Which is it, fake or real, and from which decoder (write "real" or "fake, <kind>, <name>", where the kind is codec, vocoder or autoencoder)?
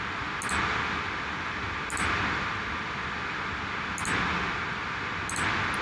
real